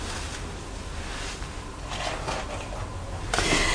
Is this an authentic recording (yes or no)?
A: yes